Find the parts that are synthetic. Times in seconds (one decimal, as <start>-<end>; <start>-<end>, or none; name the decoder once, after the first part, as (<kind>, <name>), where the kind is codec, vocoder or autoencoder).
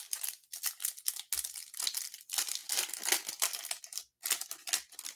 none